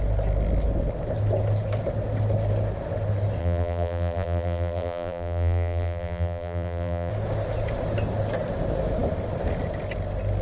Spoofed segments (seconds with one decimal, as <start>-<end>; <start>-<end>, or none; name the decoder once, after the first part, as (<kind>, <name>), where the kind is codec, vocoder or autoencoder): 3.4-7.1 (vocoder, BigVGAN v2)